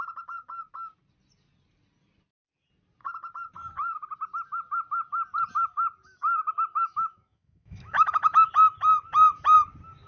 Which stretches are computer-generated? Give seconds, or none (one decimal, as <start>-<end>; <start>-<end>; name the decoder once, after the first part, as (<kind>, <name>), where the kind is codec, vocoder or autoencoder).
6.8-8.5 (autoencoder, DAC-VAE)